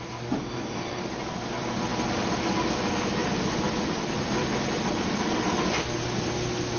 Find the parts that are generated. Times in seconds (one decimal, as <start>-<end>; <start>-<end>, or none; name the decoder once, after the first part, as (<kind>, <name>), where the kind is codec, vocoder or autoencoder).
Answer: 0.4-1.0 (codec, DAC)